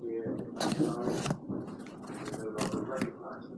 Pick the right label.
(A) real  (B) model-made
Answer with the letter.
A